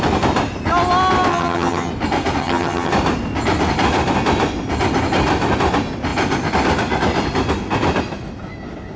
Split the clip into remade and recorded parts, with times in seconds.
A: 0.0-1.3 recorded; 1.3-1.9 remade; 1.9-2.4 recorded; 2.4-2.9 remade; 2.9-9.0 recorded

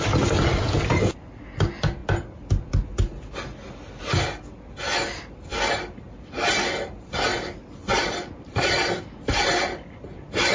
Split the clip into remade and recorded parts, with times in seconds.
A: 0.0-10.5 recorded

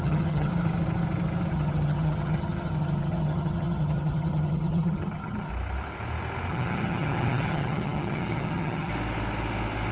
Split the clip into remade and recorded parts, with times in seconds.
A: 0.0-0.5 remade; 0.5-1.5 recorded; 1.5-5.5 remade; 5.5-6.5 recorded; 6.5-8.9 remade; 8.9-9.9 recorded

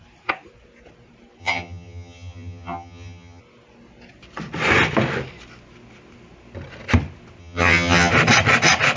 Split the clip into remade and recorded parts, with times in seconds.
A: 0.0-1.4 recorded; 1.4-3.4 remade; 3.4-7.4 recorded; 7.4-8.1 remade; 8.1-9.0 recorded